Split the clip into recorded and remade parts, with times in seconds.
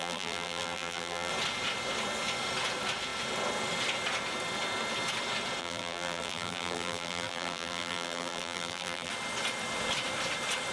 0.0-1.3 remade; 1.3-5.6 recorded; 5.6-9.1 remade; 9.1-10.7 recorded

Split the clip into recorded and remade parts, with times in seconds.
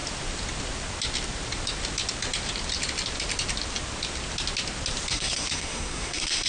0.0-5.1 recorded; 5.1-6.5 remade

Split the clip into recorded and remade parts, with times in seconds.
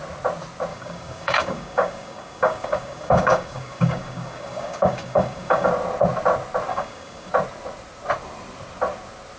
0.0-0.7 recorded; 0.7-5.7 remade; 5.7-6.7 recorded; 6.7-7.3 remade; 7.3-9.4 recorded